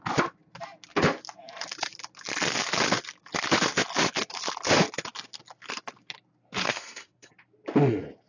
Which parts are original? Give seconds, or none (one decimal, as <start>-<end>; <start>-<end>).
0.0-6.6; 7.3-8.3